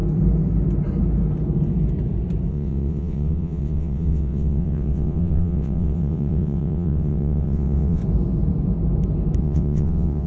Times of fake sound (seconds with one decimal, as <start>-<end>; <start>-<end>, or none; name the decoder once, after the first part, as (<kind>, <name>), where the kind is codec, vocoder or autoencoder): 2.5-8.0 (vocoder, WaveNeXt); 9.4-10.3